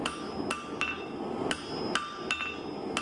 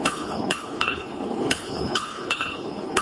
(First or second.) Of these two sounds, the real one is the first